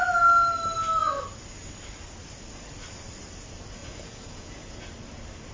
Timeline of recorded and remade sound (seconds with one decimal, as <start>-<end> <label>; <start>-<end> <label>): 0.0-3.8 recorded; 3.8-4.8 remade; 4.8-5.5 recorded